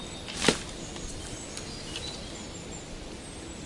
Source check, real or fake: real